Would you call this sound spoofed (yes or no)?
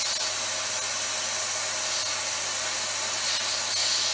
no